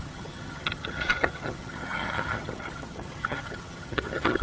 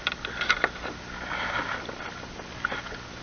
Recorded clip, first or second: second